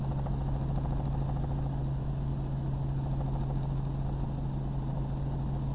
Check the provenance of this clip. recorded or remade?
recorded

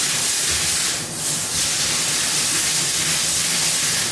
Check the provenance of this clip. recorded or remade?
recorded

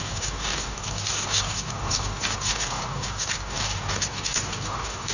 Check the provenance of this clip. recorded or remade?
remade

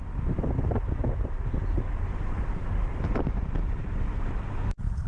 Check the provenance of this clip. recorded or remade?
recorded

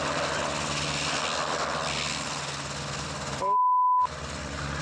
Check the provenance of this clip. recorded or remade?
recorded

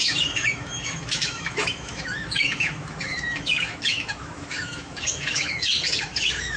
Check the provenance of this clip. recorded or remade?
remade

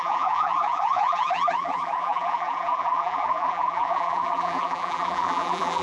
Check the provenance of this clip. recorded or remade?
remade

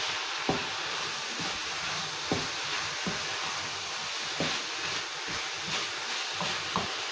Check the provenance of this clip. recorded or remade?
recorded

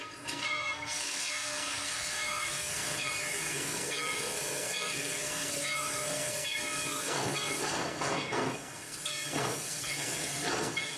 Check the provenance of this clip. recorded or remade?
remade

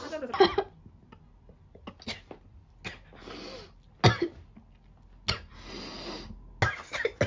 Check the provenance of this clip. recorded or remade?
recorded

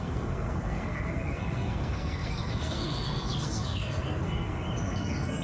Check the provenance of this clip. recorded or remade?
remade